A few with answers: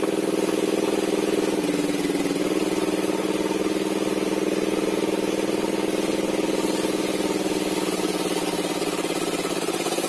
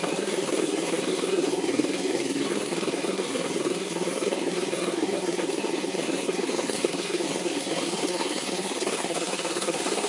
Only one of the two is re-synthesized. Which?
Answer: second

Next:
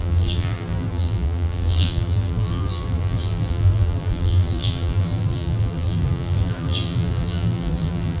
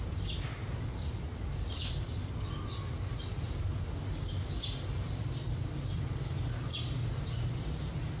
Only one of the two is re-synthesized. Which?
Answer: first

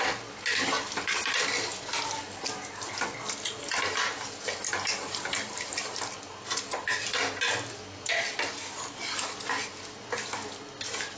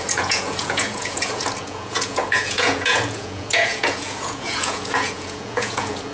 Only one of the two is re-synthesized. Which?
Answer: second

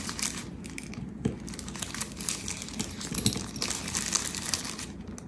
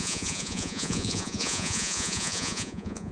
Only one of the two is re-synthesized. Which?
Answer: second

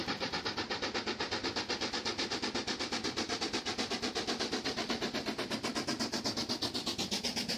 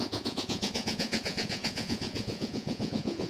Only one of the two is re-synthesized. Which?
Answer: second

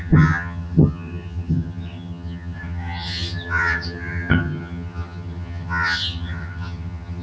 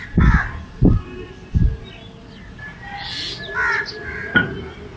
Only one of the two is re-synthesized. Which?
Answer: first